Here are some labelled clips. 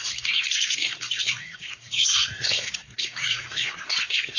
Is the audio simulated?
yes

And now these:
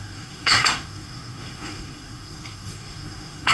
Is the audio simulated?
yes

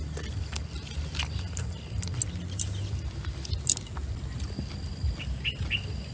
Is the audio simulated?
no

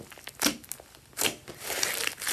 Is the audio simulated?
no